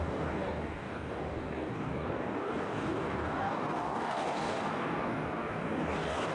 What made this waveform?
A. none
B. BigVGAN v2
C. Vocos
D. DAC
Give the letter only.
D